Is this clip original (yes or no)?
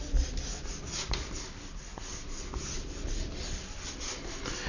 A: yes